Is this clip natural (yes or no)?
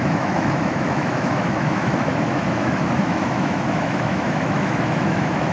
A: no